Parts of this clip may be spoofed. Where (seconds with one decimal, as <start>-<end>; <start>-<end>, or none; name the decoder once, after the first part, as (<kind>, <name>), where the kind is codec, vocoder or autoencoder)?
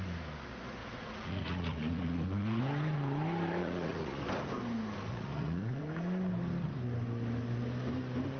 0.8-2.6 (vocoder, Vocos); 3.6-4.2; 5.1-5.8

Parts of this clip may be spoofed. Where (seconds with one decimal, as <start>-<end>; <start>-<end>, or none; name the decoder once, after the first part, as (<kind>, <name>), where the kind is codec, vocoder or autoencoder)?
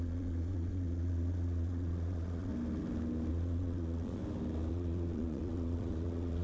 0.0-2.5 (vocoder, Vocos); 3.3-4.2; 4.7-6.4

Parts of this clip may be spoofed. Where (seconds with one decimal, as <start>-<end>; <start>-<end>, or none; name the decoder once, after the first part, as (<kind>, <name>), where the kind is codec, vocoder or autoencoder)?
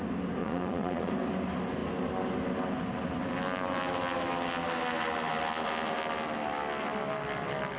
0.4-1.1 (vocoder, Vocos)